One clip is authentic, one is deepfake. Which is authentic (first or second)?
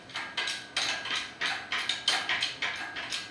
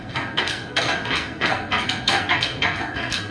first